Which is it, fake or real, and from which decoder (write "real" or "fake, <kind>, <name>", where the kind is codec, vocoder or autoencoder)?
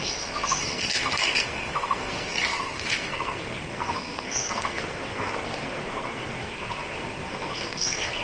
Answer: fake, codec, SNAC